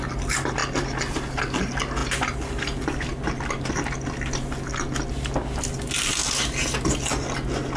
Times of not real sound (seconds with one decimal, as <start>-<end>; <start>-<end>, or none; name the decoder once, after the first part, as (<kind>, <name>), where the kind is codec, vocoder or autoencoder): none